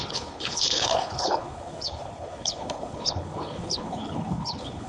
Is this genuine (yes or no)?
no